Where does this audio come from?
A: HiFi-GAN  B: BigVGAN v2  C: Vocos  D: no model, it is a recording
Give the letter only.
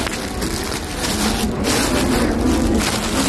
D